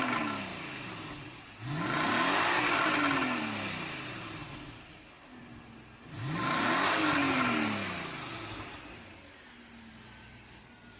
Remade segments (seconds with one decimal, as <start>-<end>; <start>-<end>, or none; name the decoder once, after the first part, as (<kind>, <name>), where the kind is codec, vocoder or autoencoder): none